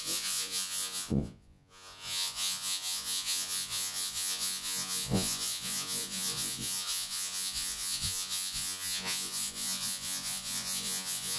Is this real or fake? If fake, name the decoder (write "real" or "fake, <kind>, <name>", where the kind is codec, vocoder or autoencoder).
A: fake, vocoder, Vocos